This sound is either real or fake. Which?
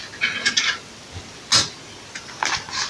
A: real